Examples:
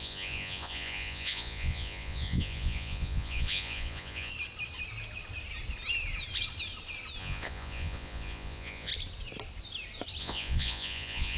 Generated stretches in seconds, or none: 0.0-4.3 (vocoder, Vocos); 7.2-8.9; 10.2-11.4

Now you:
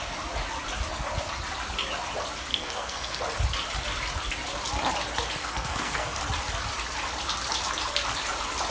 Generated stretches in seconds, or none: 2.5-3.2 (codec, SNAC); 5.4-6.2